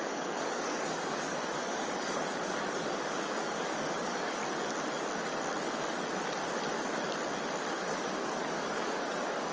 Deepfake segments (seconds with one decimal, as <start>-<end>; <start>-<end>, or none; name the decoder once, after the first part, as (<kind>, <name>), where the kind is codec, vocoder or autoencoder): 0.0-4.4 (codec, DAC); 7.7-9.5